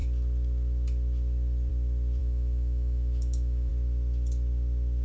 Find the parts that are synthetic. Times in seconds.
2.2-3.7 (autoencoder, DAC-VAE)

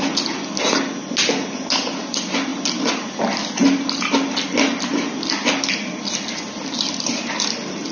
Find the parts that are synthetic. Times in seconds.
none